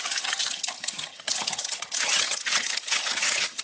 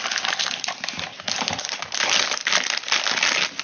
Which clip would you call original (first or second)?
second